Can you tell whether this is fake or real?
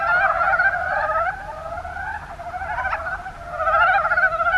real